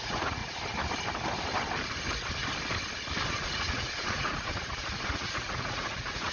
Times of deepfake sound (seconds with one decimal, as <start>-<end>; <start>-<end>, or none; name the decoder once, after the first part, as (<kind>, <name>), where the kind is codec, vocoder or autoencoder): 0.0-0.4 (vocoder, Vocos); 3.3-6.3